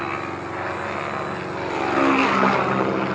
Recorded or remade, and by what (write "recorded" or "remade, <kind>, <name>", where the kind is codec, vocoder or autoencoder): recorded